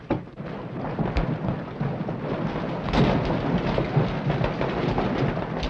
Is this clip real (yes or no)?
yes